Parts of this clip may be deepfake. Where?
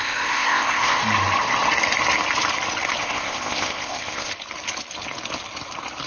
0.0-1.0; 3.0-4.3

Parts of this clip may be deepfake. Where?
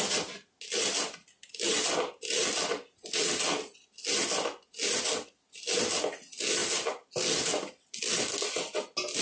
none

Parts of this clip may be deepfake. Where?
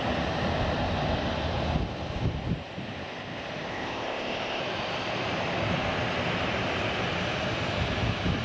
3.7-4.6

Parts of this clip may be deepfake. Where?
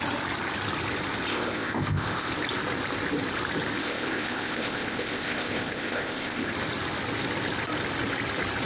1.3-2.3; 3.8-6.5